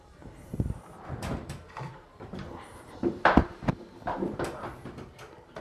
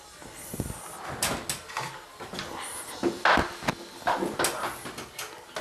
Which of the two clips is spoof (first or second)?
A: first